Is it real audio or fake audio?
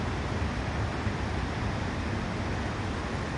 real